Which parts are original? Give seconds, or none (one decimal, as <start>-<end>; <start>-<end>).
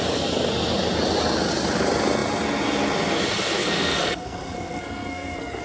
0.0-3.6